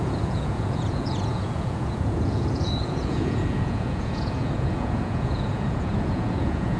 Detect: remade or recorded remade